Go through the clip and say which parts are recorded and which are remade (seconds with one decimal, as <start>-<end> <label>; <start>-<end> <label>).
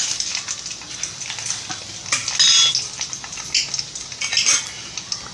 0.0-5.3 recorded